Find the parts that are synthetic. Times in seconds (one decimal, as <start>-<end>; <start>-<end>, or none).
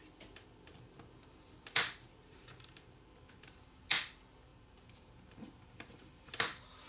0.7-3.8; 4.5-6.3